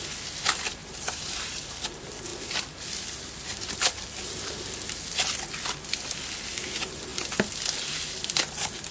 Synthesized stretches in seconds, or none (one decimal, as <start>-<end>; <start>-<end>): 0.8-1.6